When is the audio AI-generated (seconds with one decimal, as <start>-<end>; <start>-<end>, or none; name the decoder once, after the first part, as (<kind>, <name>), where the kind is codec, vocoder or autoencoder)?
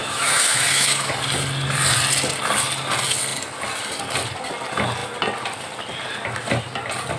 0.0-1.1 (autoencoder, DAC-VAE)